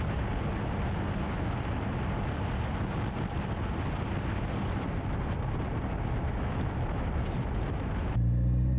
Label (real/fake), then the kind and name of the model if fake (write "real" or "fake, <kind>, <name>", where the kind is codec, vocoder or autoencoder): real